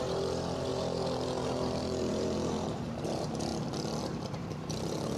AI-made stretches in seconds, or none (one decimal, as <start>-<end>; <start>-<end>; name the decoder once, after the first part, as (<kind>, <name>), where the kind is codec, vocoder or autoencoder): 0.0-3.5 (vocoder, BigVGAN v2); 4.0-5.2